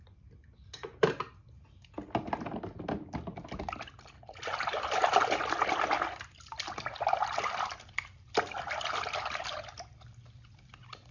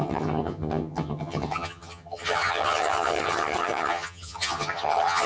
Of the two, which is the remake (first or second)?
second